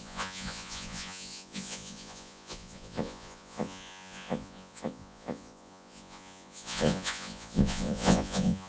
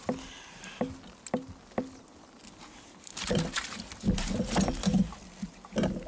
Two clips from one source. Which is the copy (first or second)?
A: first